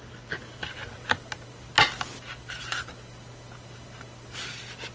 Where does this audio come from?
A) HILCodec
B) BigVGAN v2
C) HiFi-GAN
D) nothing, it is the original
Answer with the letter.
D